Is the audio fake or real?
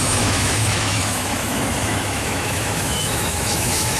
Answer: fake